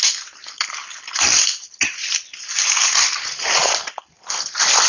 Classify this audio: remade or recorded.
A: recorded